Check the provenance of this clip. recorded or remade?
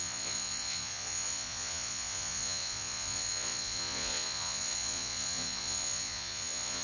remade